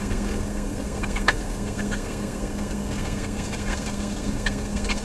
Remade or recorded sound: remade